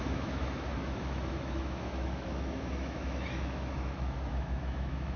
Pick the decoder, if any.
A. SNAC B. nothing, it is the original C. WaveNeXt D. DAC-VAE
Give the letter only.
D